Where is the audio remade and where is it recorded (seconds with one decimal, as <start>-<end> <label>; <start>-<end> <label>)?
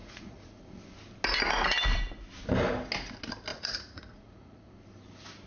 0.0-0.8 remade; 0.8-3.5 recorded; 3.5-4.7 remade; 4.7-5.5 recorded